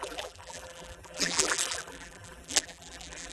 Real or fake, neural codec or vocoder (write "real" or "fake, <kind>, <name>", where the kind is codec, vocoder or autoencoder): fake, vocoder, BigVGAN v2